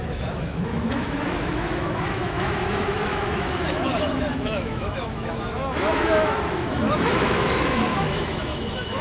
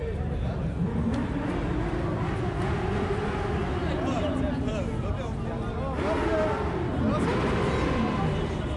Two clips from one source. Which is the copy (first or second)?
first